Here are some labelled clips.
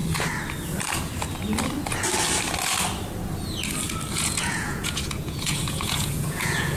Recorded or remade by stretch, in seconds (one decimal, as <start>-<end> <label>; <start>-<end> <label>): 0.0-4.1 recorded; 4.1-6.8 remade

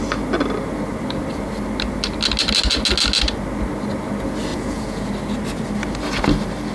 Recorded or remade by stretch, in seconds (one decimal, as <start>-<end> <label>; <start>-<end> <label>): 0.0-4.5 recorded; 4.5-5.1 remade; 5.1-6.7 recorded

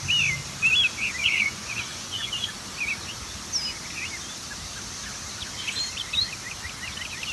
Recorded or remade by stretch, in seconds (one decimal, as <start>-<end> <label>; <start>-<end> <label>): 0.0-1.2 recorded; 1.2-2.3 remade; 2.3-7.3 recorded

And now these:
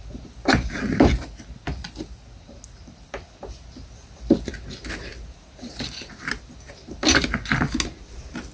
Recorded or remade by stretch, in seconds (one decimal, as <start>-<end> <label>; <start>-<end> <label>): 0.0-8.5 recorded

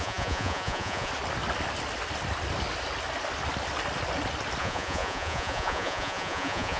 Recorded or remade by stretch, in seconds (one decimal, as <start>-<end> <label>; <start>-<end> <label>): 0.0-1.1 remade; 1.1-4.6 recorded; 4.6-6.8 remade

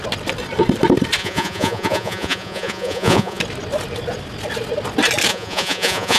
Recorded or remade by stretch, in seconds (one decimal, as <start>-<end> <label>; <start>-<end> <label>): 0.0-1.2 recorded; 1.2-3.4 remade; 3.4-5.3 recorded; 5.3-6.2 remade